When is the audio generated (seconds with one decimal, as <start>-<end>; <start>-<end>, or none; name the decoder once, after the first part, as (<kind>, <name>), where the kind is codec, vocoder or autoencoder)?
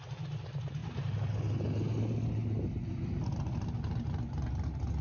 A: none